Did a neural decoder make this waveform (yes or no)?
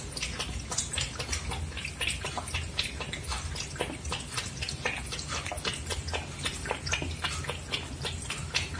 no